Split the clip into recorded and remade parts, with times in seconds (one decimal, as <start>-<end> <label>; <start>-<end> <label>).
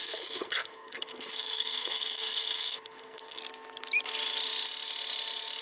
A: 0.0-3.4 remade; 3.4-5.6 recorded